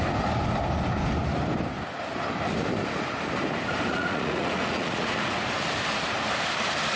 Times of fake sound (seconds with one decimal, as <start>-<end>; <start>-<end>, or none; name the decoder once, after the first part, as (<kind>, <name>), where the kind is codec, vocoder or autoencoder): 3.9-5.5 (vocoder, Vocos)